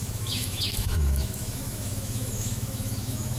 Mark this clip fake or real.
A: fake